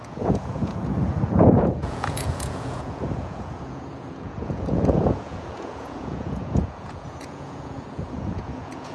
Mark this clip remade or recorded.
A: remade